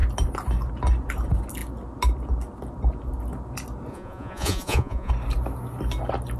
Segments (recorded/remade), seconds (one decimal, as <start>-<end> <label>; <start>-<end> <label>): 0.0-3.9 recorded; 3.9-5.1 remade; 5.1-6.4 recorded